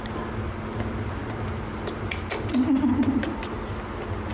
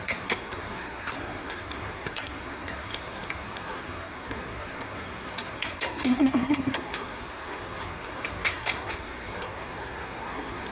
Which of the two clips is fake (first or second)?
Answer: second